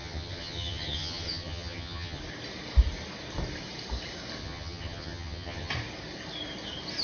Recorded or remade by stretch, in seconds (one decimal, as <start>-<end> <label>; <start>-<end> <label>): 0.0-2.2 remade; 2.2-4.4 recorded; 4.4-5.7 remade; 5.7-7.0 recorded